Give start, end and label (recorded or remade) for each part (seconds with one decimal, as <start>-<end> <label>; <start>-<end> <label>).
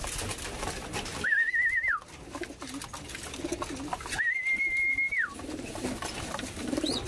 0.0-1.1 recorded; 1.1-2.1 remade; 2.1-4.5 recorded; 4.5-7.1 remade